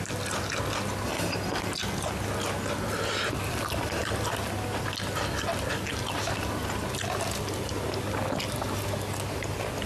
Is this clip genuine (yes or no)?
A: yes